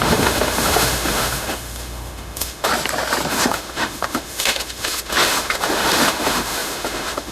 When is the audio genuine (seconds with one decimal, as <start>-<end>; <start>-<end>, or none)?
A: 2.7-3.3